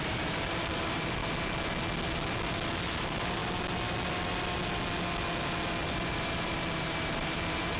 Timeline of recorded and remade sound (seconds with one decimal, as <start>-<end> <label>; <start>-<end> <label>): 0.0-1.2 remade; 1.2-3.0 recorded; 3.0-3.4 remade; 3.4-5.8 recorded; 5.8-7.8 remade

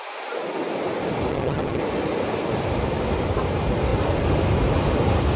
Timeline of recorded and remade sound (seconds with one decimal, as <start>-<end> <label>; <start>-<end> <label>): 0.0-1.3 recorded; 1.3-1.8 remade; 1.8-5.4 recorded